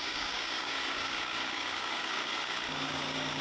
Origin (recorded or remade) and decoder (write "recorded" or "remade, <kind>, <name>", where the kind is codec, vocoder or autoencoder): remade, codec, DAC